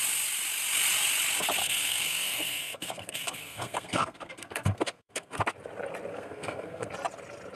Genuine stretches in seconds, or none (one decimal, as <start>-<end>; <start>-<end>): 0.0-1.6; 5.4-6.1; 6.9-7.6